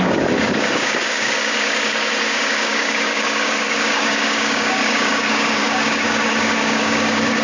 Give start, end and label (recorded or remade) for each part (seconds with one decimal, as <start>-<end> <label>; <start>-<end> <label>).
0.0-7.4 remade